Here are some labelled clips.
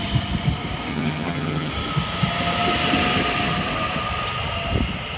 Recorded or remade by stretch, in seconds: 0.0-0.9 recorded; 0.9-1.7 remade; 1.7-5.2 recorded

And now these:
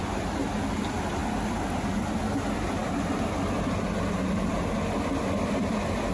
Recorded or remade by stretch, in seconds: 0.0-6.1 recorded

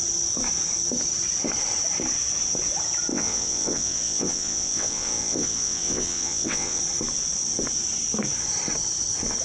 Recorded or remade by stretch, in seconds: 0.0-3.1 recorded; 3.1-6.8 remade; 6.8-9.4 recorded

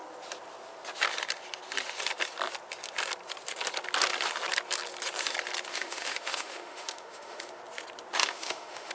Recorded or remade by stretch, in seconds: 0.0-5.7 recorded; 5.7-7.6 remade; 7.6-8.2 recorded; 8.2-8.9 remade

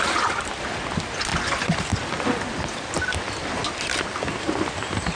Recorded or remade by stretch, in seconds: 0.0-5.2 recorded

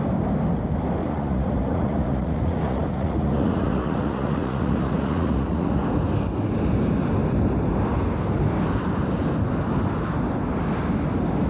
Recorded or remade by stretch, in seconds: 0.0-1.0 recorded; 1.0-5.8 remade; 5.8-11.5 recorded

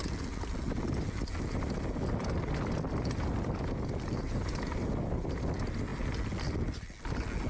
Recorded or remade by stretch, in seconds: 0.0-7.5 recorded

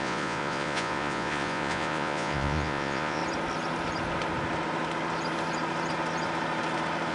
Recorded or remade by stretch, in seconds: 0.0-3.2 remade; 3.2-7.1 recorded